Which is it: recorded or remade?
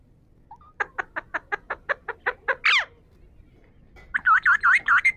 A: recorded